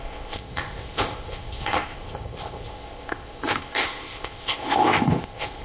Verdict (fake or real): fake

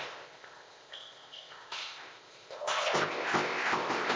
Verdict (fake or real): fake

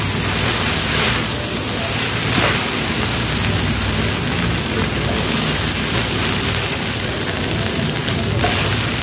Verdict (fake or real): real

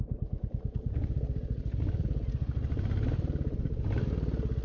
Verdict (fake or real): real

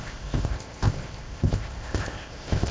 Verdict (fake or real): fake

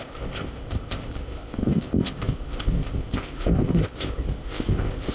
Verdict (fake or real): fake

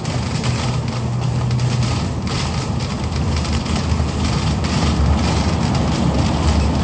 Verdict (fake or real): real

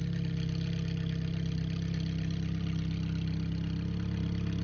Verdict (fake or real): real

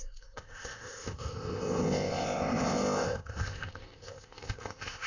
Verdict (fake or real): fake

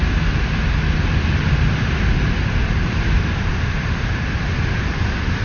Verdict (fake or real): real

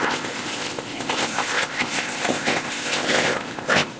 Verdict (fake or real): fake